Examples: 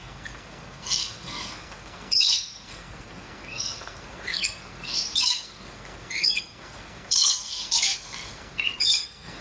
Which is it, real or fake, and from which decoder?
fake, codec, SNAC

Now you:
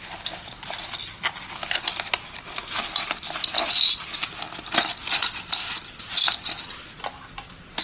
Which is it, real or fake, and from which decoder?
real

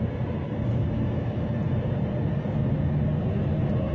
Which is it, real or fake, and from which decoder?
real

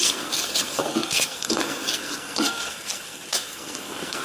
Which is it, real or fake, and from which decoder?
fake, codec, SNAC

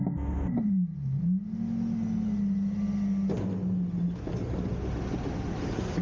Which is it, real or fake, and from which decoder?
real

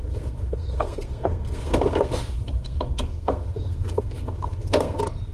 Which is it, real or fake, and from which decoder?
fake, codec, SNAC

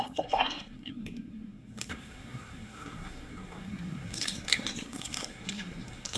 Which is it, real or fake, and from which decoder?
fake, codec, SNAC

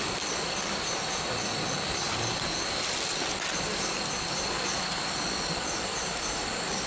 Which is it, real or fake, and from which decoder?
real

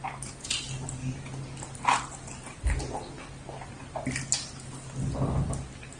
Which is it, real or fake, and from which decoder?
real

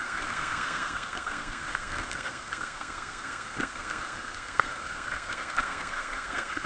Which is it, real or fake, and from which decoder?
fake, codec, SNAC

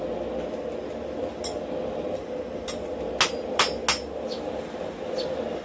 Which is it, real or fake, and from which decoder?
real